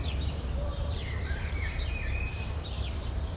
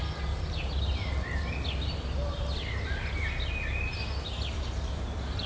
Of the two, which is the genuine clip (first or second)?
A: second